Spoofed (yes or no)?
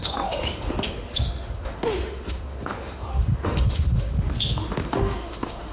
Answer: yes